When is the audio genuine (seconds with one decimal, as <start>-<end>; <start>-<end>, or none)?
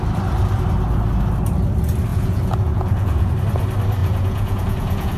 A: 0.0-2.1; 3.3-4.0